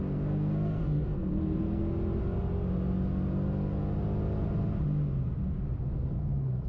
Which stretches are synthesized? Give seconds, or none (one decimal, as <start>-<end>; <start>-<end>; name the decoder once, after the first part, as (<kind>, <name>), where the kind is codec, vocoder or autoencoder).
0.0-1.8 (codec, SNAC); 5.8-6.7